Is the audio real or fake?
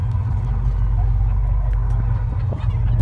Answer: real